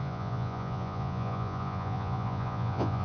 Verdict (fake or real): fake